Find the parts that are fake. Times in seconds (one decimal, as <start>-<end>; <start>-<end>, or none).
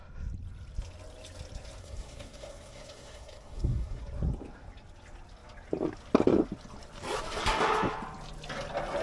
1.8-4.0